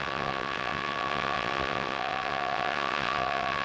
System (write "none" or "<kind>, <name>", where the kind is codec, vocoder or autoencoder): vocoder, WaveNeXt